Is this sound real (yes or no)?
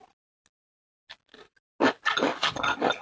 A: yes